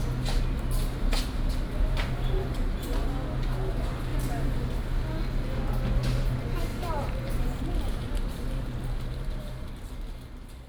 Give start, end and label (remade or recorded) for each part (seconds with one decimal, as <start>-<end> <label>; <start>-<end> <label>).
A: 0.0-4.1 recorded; 4.1-4.6 remade; 4.6-6.7 recorded; 6.7-9.7 remade; 9.7-10.7 recorded